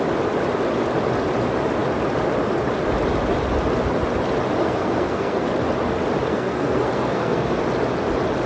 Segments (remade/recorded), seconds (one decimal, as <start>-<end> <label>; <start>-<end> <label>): 0.0-4.6 recorded; 4.6-5.5 remade; 5.5-6.3 recorded; 6.3-7.6 remade; 7.6-8.5 recorded